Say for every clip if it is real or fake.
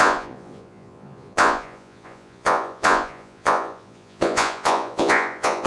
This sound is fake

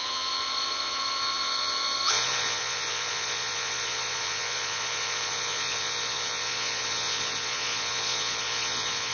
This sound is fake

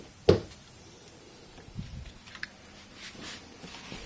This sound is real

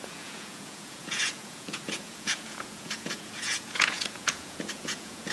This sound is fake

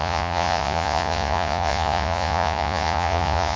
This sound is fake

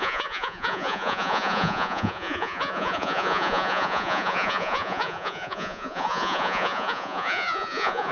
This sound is fake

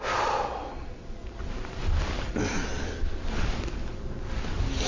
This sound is real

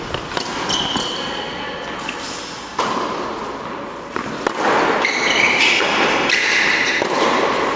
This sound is real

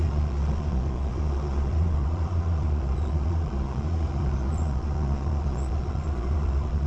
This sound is fake